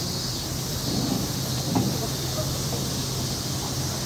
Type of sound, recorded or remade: recorded